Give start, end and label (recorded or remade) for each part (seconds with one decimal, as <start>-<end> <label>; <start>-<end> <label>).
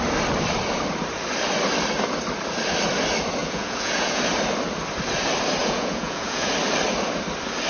0.0-3.4 recorded; 3.4-4.2 remade; 4.2-5.6 recorded; 5.6-6.5 remade; 6.5-7.7 recorded